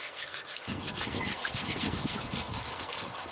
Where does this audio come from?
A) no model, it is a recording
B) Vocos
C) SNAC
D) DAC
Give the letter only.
C